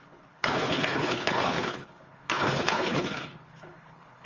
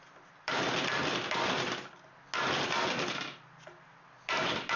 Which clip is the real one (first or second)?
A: second